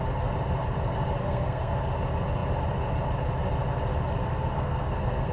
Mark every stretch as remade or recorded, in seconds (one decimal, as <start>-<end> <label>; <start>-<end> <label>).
0.0-1.2 recorded; 1.2-1.7 remade; 1.7-4.2 recorded; 4.2-5.3 remade